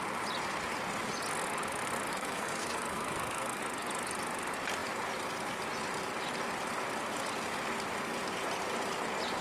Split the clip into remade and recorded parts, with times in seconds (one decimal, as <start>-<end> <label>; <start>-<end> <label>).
0.0-2.1 recorded; 2.1-3.6 remade; 3.6-9.4 recorded